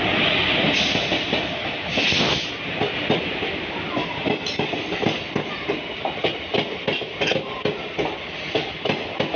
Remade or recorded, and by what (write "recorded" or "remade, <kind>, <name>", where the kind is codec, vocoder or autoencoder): recorded